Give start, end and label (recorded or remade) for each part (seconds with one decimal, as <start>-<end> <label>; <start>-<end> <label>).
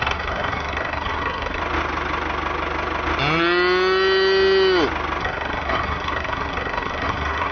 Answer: 0.0-1.6 remade; 1.6-5.2 recorded; 5.2-7.5 remade